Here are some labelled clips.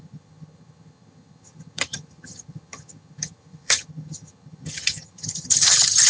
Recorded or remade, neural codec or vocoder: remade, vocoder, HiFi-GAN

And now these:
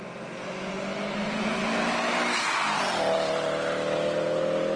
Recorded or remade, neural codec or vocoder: recorded